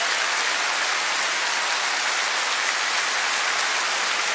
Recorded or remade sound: recorded